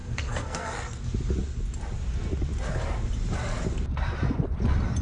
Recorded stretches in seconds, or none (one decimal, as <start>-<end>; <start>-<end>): 1.0-5.0